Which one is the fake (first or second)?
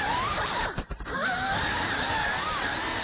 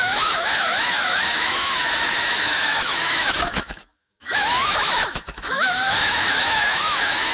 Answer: second